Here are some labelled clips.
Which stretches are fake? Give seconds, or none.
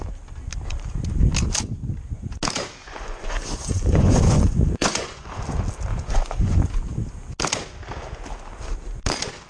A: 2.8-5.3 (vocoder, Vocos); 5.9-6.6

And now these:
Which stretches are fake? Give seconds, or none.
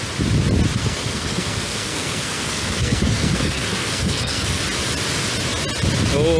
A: 0.8-4.6 (codec, SNAC)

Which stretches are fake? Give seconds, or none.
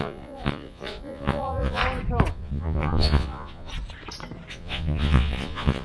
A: 0.0-1.8 (vocoder, Vocos); 2.3-3.7; 4.5-5.8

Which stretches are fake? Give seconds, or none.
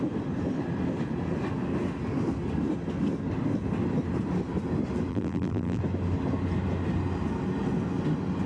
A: 5.1-5.8 (vocoder, BigVGAN v2)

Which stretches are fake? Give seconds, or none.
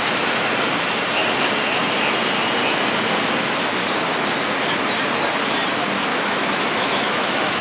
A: 6.1-7.6 (autoencoder, DAC-VAE)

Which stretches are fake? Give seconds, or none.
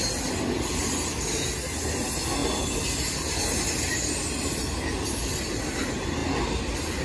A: none